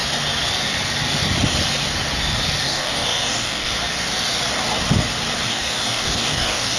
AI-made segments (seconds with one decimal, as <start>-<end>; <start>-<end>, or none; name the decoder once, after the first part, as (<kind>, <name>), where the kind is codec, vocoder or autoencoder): 2.6-3.7 (codec, DAC); 5.5-6.8